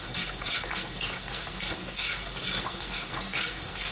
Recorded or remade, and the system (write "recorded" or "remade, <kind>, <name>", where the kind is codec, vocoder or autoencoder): remade, codec, SNAC